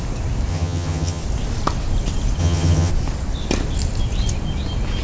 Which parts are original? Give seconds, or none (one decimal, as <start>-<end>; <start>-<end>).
0.0-0.5; 1.2-2.4; 2.9-5.0